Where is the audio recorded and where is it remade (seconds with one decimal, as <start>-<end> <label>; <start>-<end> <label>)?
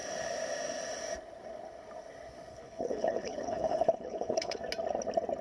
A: 0.0-2.5 recorded; 2.5-4.6 remade; 4.6-5.4 recorded